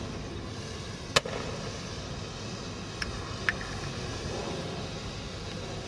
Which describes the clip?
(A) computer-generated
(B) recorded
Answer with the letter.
B